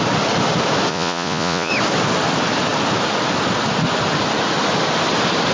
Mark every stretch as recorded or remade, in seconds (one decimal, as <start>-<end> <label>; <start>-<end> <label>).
0.0-0.9 recorded; 0.9-1.7 remade; 1.7-5.5 recorded